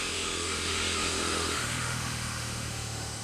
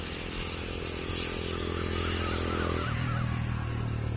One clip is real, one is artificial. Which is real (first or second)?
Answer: second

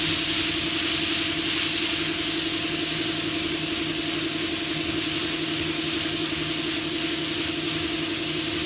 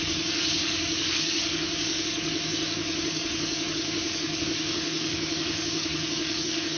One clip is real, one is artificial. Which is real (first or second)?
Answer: first